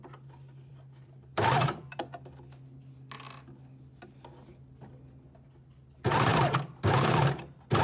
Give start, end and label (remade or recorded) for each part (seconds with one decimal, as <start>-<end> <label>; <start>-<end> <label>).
0.0-0.7 recorded; 0.7-2.0 remade; 2.0-7.8 recorded